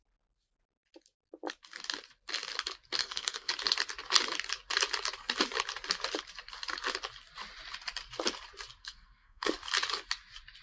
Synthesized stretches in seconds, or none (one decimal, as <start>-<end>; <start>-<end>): 3.0-3.5; 8.8-9.5